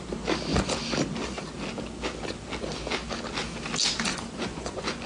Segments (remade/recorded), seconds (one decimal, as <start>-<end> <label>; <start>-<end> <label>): 0.0-4.1 recorded; 4.1-5.1 remade